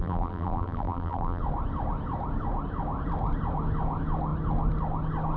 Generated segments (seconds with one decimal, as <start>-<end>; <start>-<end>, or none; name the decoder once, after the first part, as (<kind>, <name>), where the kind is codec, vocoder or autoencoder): 0.0-1.4 (vocoder, BigVGAN v2)